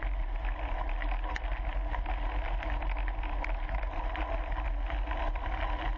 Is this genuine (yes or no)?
yes